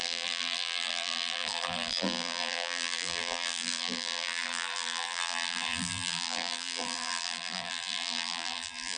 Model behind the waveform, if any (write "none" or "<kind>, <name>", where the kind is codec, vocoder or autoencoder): vocoder, BigVGAN v2